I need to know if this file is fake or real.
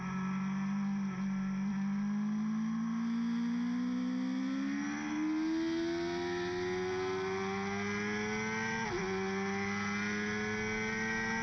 real